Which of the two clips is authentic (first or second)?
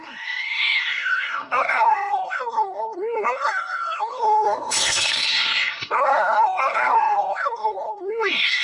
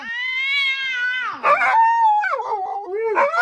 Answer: second